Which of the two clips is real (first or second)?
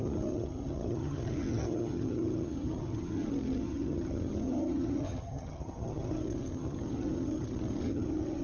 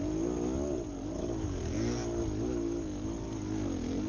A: second